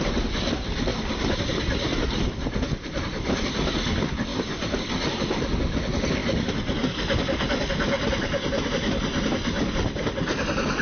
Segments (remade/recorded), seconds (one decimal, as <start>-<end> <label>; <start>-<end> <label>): 0.0-10.8 recorded